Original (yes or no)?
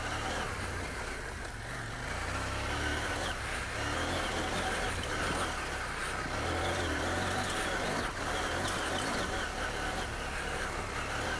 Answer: yes